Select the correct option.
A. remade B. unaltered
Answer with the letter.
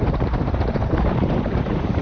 A